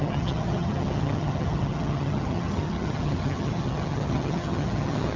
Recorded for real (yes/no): no